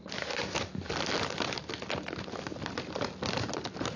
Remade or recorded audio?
recorded